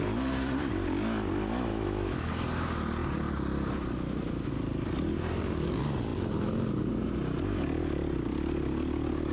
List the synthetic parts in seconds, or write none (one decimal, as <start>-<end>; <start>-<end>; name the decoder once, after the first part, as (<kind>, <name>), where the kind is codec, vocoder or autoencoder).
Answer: 1.7-2.3 (autoencoder, DAC-VAE)